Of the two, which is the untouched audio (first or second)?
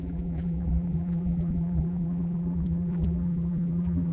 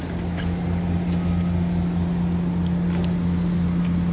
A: second